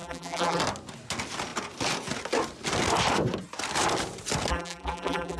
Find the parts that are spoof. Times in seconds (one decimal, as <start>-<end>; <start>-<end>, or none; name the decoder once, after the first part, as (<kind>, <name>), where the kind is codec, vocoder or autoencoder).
0.0-0.6 (vocoder, BigVGAN v2); 4.5-5.4